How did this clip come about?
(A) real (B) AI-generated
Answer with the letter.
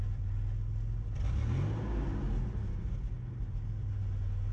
A